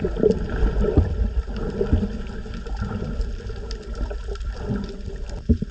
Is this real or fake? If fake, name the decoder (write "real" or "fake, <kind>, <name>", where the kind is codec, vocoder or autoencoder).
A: fake, vocoder, BigVGAN v2